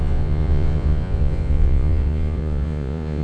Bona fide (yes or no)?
no